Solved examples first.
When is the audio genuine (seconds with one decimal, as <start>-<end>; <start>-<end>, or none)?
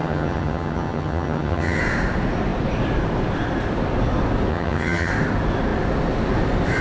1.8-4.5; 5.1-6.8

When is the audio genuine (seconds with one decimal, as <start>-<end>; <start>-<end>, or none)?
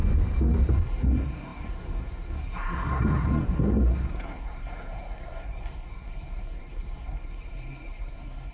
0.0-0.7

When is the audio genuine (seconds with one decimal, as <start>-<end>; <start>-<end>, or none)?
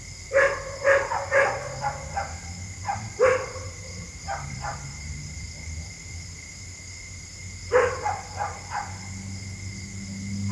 0.0-2.8; 6.6-7.4; 8.6-10.5